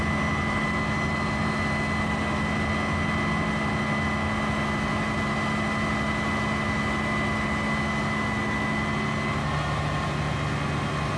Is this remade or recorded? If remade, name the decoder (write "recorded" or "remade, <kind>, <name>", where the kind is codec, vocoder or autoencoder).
recorded